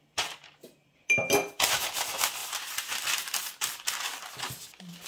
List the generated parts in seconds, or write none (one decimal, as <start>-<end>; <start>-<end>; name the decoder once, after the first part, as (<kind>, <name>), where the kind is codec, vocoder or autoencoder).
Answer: none